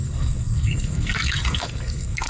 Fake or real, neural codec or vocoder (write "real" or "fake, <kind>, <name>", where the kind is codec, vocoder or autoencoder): fake, codec, SNAC